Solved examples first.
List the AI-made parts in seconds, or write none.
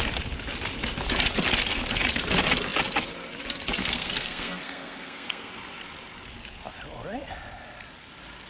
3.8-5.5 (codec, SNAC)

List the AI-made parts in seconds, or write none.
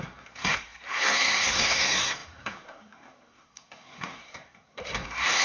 0.0-5.4 (codec, SNAC)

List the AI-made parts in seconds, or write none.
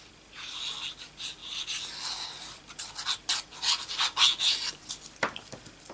none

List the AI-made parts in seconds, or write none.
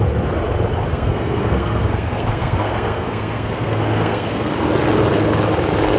0.9-4.5 (codec, SNAC)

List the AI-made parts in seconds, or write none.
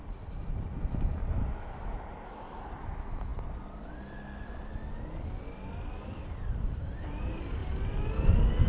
none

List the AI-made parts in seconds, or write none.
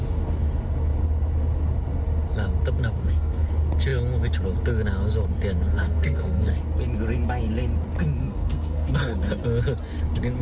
3.0-3.5 (codec, SNAC); 5.7-6.5; 8.2-8.9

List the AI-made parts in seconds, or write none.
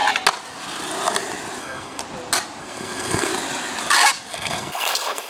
1.6-2.0 (codec, SNAC); 2.6-3.3; 4.3-5.3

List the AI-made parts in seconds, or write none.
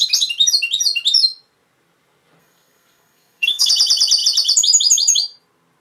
2.4-3.7 (codec, SNAC)